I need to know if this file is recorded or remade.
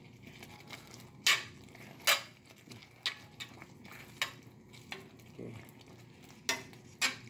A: recorded